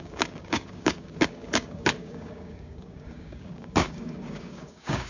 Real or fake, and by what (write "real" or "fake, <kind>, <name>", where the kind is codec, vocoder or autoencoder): fake, codec, DAC